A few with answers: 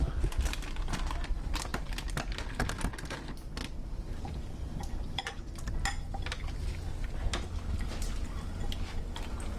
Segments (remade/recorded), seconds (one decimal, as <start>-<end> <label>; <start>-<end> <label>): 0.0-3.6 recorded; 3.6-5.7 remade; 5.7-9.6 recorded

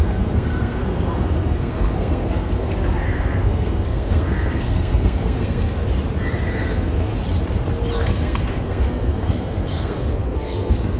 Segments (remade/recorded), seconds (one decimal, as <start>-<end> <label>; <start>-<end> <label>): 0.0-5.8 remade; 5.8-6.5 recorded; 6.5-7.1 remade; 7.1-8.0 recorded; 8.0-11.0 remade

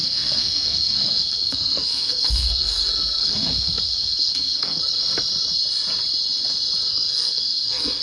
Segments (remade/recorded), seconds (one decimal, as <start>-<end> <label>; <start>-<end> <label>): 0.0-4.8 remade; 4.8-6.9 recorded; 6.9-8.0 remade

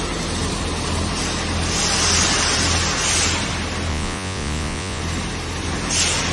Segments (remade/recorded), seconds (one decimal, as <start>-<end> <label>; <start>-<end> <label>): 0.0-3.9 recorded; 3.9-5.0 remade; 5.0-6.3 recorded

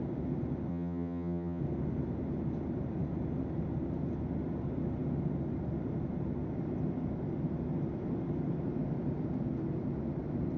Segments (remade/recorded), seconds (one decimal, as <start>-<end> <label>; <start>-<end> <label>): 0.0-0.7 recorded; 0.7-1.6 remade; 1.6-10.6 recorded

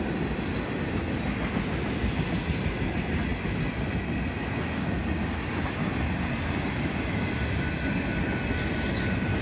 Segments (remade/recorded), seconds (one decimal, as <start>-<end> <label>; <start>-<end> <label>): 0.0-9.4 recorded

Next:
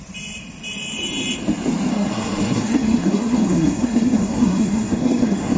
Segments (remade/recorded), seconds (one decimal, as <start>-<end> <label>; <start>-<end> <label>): 0.0-1.9 recorded; 1.9-5.6 remade

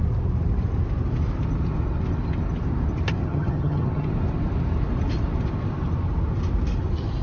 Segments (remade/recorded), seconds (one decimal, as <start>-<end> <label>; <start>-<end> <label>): 0.0-3.2 recorded; 3.2-4.1 remade; 4.1-7.2 recorded